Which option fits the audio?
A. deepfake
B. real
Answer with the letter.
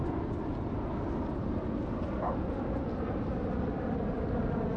B